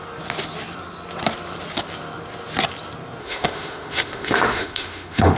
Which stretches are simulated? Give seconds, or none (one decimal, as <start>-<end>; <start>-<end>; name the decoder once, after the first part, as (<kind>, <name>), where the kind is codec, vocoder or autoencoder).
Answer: 3.2-5.4 (autoencoder, DAC-VAE)